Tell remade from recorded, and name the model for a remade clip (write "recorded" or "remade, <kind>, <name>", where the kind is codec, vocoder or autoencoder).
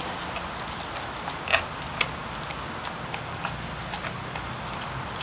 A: recorded